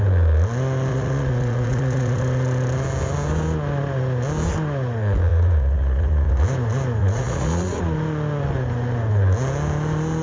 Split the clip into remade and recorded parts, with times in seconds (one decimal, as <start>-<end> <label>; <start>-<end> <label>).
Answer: 0.0-0.9 recorded; 0.9-2.2 remade; 2.2-5.3 recorded; 5.3-6.3 remade; 6.3-7.0 recorded; 7.0-7.8 remade; 7.8-10.2 recorded